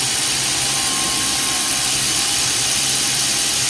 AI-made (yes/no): no